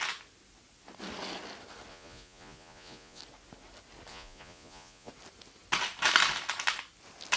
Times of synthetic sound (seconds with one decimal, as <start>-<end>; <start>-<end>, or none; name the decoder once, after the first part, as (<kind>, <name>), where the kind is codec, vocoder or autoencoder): 1.9-3.2 (vocoder, Vocos); 4.1-5.1